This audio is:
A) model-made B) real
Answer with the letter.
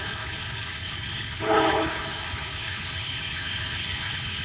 A